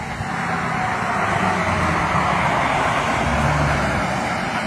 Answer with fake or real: real